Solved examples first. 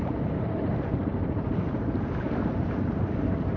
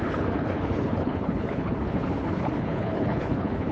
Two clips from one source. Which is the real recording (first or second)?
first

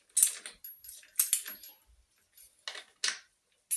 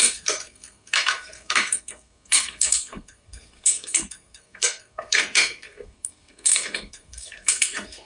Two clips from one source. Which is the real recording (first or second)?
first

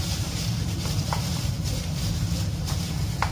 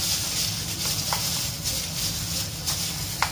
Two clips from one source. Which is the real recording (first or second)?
second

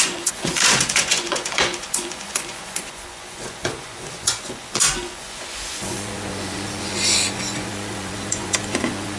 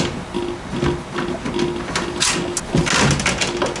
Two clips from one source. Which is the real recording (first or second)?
second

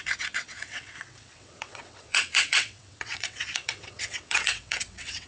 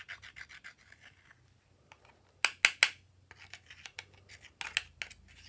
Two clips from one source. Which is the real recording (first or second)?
second